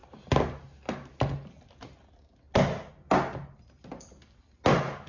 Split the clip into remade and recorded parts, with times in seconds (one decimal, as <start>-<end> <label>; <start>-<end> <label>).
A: 0.0-5.1 recorded